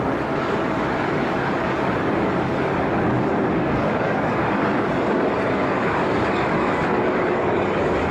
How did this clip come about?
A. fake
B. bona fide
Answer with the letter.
A